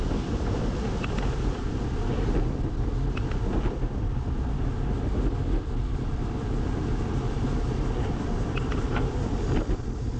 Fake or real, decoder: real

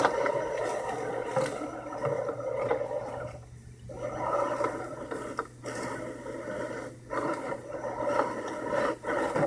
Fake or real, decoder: real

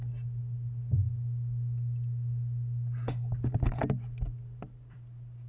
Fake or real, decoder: real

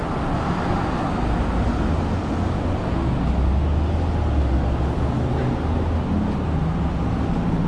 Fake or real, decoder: real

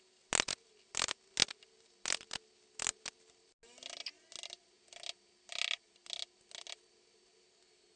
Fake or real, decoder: real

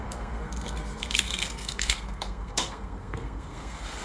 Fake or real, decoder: fake, codec, SNAC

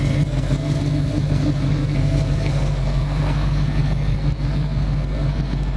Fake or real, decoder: fake, codec, SNAC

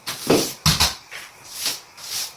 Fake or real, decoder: real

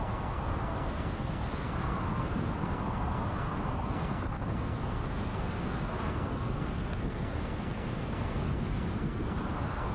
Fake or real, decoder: fake, codec, SNAC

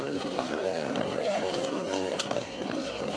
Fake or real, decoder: fake, codec, SNAC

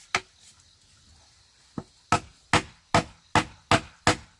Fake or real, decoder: real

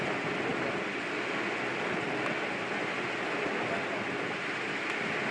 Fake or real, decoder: real